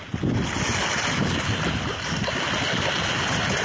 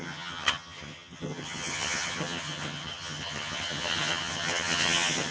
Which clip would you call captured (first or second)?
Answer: first